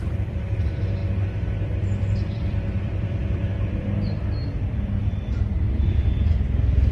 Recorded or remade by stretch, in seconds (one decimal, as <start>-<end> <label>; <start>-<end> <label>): 0.0-1.0 remade; 1.0-1.8 recorded; 1.8-6.9 remade